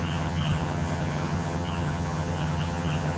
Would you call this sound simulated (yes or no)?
yes